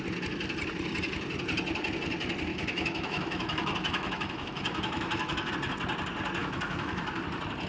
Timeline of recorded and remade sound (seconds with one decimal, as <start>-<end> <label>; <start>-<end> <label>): 0.0-2.5 recorded; 2.5-5.5 remade; 5.5-6.4 recorded; 6.4-7.2 remade; 7.2-7.7 recorded